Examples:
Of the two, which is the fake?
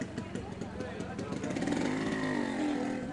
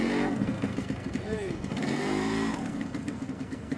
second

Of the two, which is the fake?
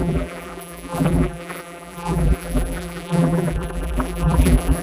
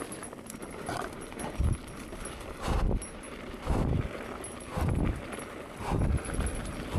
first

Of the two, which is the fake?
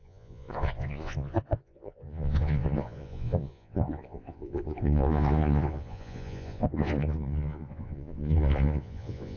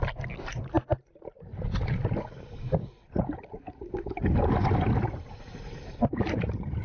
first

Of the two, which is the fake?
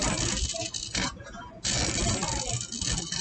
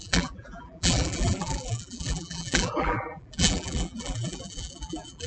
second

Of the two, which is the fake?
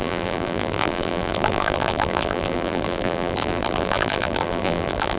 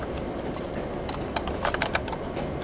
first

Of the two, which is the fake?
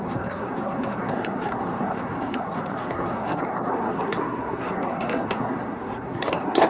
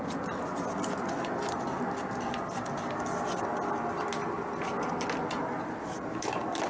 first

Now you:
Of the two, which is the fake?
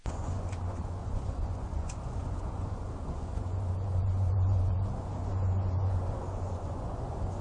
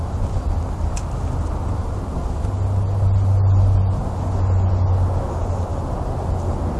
first